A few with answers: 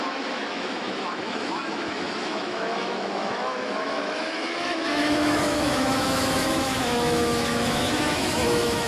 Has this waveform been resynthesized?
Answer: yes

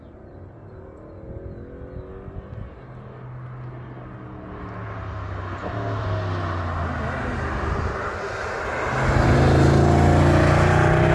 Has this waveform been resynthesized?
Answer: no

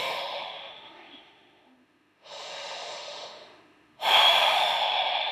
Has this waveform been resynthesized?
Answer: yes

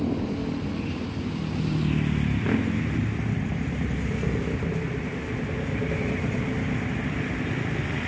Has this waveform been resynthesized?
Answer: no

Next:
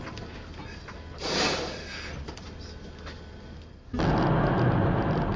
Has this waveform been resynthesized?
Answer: no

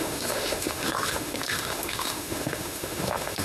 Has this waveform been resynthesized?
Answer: yes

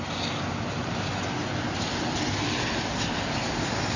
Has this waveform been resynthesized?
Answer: no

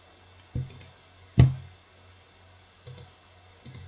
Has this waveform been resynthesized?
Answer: no